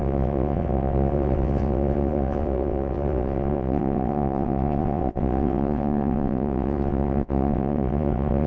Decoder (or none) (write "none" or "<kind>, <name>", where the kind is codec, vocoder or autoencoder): vocoder, WaveNeXt